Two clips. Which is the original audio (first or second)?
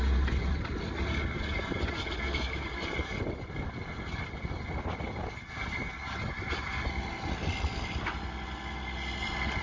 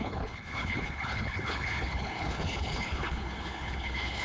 first